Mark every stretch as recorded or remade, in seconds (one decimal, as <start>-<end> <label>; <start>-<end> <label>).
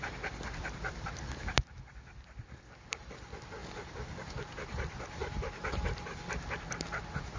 0.0-7.4 remade